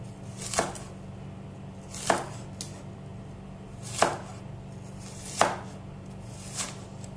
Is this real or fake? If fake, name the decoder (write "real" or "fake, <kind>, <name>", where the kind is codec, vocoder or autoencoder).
real